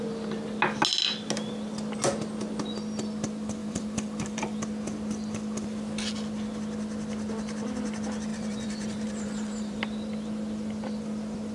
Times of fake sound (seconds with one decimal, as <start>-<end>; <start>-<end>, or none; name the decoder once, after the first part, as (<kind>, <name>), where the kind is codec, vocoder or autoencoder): 3.6-4.6 (vocoder, BigVGAN v2); 8.3-9.8